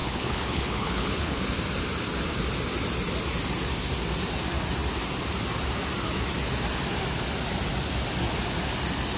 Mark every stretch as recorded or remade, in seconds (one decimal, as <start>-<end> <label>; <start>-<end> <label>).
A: 0.0-1.4 remade; 1.4-9.2 recorded

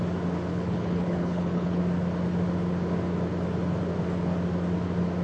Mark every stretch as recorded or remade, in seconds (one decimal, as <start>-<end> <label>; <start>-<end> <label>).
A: 0.0-0.5 recorded; 0.5-1.8 remade; 1.8-5.2 recorded